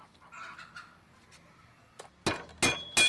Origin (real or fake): real